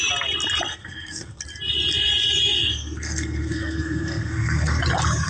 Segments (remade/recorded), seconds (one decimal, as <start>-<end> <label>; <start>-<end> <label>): 0.0-0.7 recorded; 0.7-1.4 remade; 1.4-2.7 recorded; 2.7-4.8 remade; 4.8-5.3 recorded